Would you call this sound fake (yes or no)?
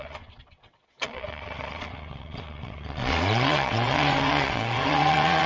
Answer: yes